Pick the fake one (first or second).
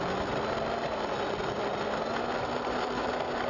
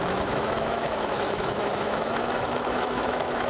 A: second